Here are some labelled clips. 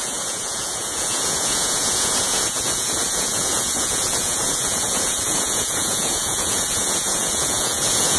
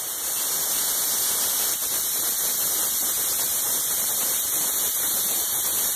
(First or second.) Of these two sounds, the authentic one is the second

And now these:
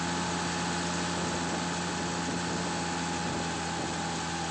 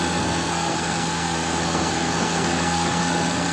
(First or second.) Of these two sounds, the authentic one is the first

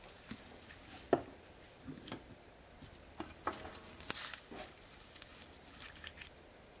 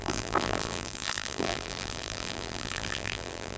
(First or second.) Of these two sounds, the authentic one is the first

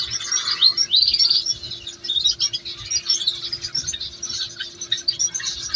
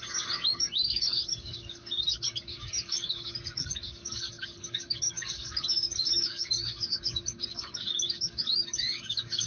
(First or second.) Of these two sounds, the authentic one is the first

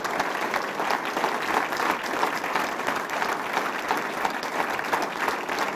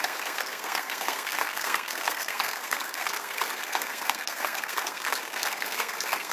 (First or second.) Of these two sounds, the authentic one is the first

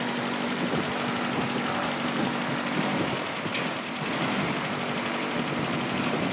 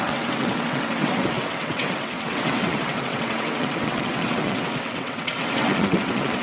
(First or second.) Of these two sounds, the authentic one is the first